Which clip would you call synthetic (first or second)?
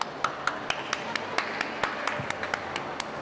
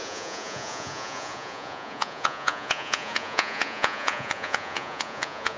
second